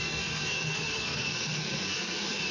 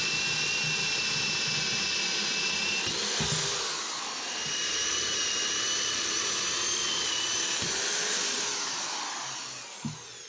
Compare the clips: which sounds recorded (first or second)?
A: second